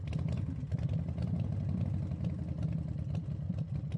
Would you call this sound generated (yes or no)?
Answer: no